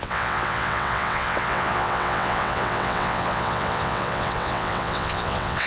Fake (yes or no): yes